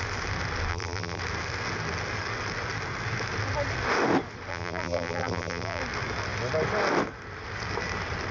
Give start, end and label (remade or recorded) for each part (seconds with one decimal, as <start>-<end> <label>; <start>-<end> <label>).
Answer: 0.0-0.7 recorded; 0.7-1.2 remade; 1.2-4.5 recorded; 4.5-5.8 remade; 5.8-8.3 recorded